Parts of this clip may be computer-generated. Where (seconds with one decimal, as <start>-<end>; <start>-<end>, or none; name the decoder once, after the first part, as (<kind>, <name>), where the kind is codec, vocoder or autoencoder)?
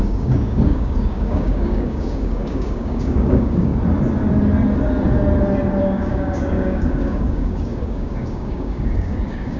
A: 0.0-3.7 (codec, DAC); 5.8-9.6